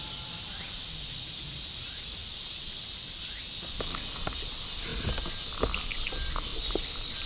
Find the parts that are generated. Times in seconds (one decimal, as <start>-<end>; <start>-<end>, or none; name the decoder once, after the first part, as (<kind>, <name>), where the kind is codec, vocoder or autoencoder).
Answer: none